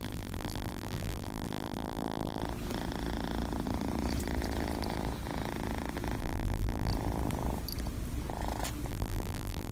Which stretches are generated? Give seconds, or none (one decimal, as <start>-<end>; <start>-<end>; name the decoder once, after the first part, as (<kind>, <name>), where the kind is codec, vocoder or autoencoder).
0.0-2.4 (vocoder, BigVGAN v2); 6.2-6.9; 8.9-9.7